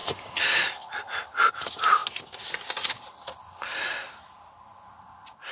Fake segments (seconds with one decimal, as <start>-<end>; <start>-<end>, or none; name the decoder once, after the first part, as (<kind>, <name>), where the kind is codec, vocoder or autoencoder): 0.0-1.5 (vocoder, BigVGAN v2)